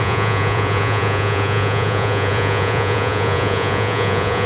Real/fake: fake